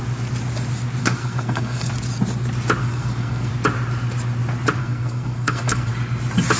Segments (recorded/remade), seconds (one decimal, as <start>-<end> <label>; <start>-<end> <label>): 0.0-1.0 recorded; 1.0-1.9 remade; 1.9-2.8 recorded; 2.8-3.5 remade; 3.5-4.8 recorded; 4.8-5.9 remade; 5.9-6.6 recorded